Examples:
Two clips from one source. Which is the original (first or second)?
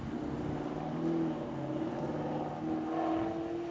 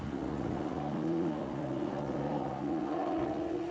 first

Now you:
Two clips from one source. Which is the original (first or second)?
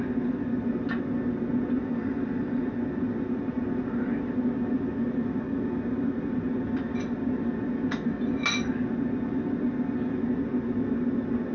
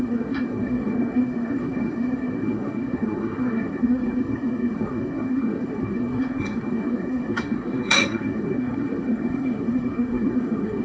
first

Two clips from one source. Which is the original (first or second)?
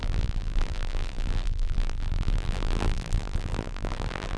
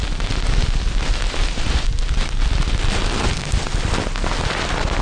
second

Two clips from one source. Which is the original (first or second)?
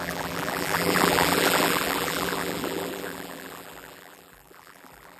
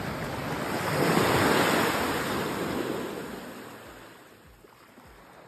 second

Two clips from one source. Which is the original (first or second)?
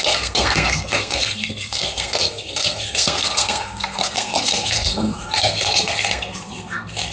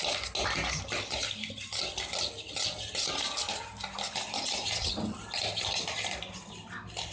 second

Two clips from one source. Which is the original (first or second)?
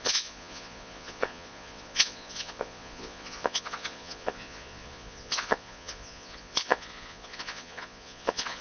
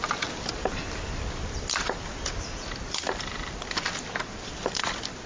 second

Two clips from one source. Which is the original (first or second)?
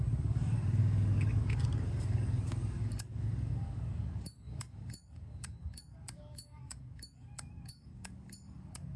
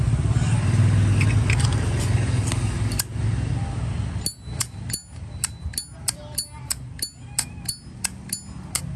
second